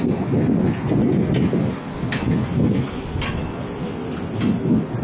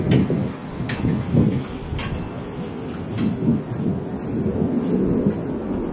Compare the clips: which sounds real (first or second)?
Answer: second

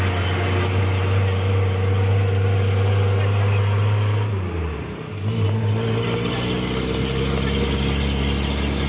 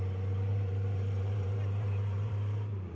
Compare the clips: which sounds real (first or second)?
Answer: first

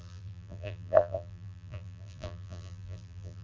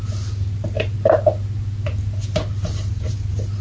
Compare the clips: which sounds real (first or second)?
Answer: second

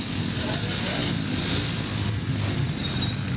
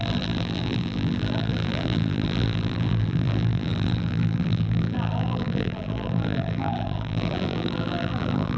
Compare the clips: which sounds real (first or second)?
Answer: first